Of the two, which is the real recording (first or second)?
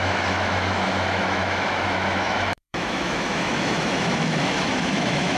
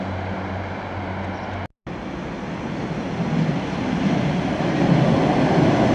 second